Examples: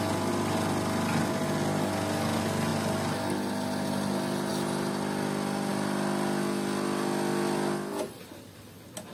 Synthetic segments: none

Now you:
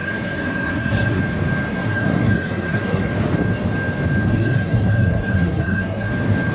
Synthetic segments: 0.0-1.2 (codec, SNAC); 1.7-3.1; 4.3-6.1